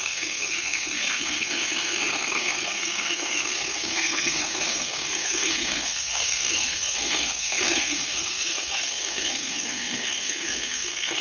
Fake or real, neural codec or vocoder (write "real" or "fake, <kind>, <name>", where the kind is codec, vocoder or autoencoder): fake, codec, SNAC